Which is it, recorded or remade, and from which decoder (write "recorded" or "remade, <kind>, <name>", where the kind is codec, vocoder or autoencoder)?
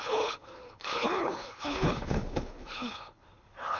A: remade, codec, HILCodec